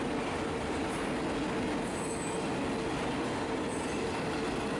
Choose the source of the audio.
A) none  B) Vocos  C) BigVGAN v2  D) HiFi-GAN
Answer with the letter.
A